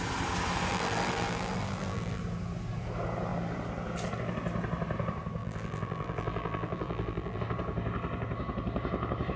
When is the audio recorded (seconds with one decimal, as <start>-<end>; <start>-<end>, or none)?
0.0-0.7; 2.2-5.4; 7.4-9.4